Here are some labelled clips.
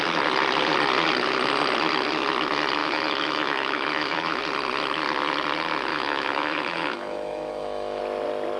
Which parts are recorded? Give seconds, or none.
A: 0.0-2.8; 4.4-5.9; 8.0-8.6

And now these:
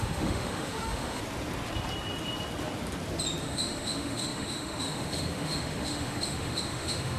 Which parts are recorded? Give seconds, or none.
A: 1.2-3.4

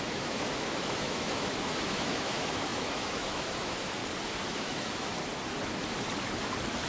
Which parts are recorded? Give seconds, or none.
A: 4.0-4.5; 5.1-6.9

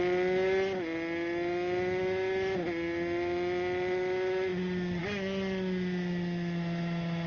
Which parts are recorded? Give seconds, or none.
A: 0.0-7.3

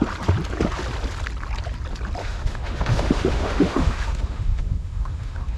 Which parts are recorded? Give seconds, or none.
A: 0.0-2.2